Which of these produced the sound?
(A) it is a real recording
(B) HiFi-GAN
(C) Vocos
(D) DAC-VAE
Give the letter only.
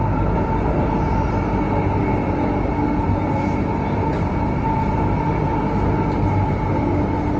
A